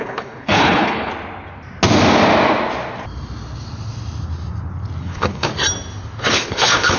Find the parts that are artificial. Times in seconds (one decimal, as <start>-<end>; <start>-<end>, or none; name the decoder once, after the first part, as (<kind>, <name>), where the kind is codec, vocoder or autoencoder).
0.0-1.1 (codec, HILCodec); 5.0-5.5; 6.2-7.0